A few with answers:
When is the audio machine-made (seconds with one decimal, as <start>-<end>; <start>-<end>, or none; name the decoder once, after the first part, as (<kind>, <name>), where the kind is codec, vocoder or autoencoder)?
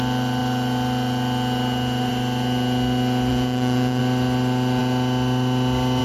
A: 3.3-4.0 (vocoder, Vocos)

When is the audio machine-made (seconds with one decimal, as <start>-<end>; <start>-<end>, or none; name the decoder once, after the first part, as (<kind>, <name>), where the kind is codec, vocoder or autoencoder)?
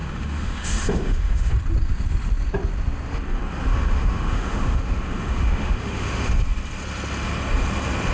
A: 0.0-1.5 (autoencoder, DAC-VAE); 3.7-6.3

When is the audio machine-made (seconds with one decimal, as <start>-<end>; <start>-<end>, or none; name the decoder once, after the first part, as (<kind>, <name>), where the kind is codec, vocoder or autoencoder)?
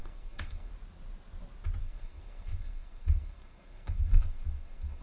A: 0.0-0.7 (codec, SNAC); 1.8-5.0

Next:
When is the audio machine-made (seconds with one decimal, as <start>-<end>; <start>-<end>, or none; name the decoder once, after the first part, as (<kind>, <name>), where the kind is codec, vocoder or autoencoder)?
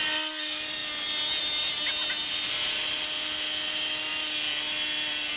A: none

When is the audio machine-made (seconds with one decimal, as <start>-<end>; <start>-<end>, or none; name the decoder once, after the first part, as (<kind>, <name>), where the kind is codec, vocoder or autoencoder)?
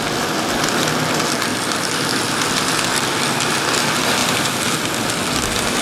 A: 1.5-3.5 (vocoder, BigVGAN v2); 4.2-4.8